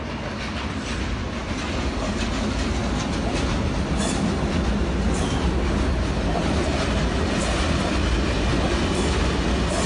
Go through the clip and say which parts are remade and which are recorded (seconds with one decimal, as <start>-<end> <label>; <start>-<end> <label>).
0.0-9.9 recorded